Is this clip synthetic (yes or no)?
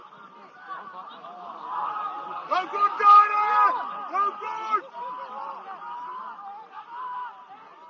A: no